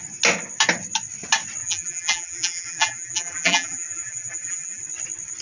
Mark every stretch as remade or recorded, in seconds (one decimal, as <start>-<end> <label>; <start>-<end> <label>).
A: 0.0-1.6 recorded; 1.6-4.8 remade; 4.8-5.4 recorded